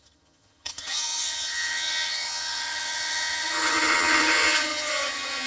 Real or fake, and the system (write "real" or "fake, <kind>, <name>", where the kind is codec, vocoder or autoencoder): fake, vocoder, HiFi-GAN